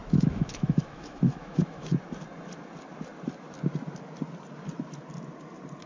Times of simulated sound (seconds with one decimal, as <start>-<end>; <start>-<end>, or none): 0.0-1.9